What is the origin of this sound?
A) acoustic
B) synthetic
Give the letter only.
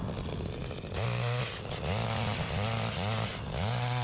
A